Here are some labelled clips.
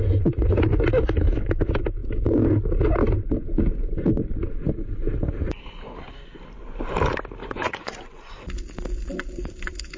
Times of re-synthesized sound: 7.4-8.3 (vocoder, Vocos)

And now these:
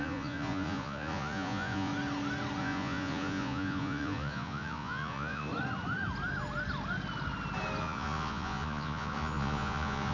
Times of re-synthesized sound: 0.0-1.9 (vocoder, Vocos); 2.6-5.5; 7.8-10.1

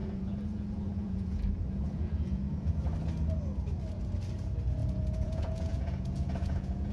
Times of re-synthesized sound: 0.0-2.8 (vocoder, Vocos); 4.8-6.9

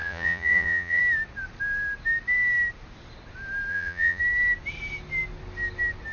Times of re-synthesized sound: 0.0-1.0 (vocoder, Vocos); 3.7-4.2

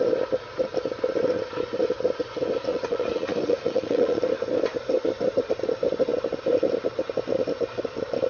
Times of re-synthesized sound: 2.7-4.2 (vocoder, Vocos)

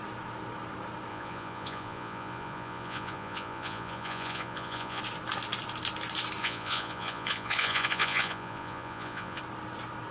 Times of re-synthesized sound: 1.1-5.0 (vocoder, Vocos); 6.4-9.4

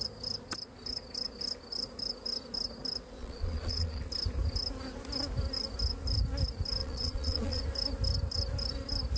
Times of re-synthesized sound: 3.2-4.0 (vocoder, Vocos); 6.8-7.6

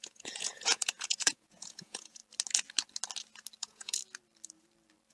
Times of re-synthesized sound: 0.0-2.2 (vocoder, Vocos); 3.6-4.0